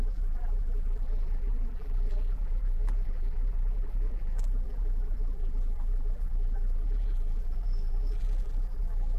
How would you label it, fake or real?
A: fake